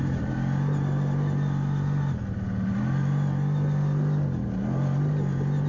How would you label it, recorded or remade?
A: recorded